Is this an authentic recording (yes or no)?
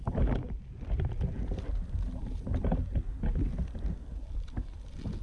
yes